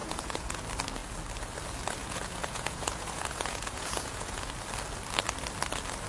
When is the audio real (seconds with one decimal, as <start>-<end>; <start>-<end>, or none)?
0.6-2.0; 4.5-6.1